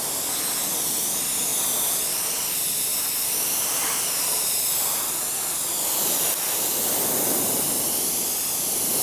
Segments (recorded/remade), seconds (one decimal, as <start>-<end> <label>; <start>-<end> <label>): 0.0-9.0 recorded